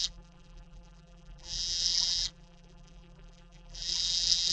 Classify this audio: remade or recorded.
remade